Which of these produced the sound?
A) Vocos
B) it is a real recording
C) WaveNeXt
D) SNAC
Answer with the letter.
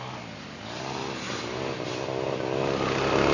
B